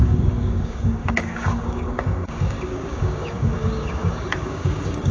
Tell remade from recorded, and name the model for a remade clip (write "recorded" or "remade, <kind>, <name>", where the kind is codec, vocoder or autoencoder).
remade, codec, DAC